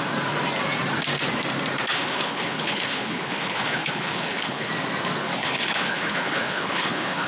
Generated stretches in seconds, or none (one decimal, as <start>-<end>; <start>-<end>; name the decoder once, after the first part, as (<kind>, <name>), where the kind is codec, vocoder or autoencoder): 1.9-4.7 (codec, HILCodec); 5.4-7.3